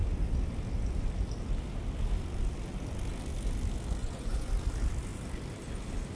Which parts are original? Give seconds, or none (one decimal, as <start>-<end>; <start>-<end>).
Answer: 0.0-4.0; 4.5-6.2